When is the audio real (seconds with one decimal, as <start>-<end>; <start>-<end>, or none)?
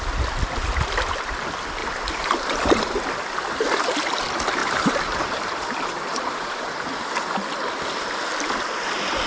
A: 0.0-1.8; 3.1-4.6; 6.8-9.3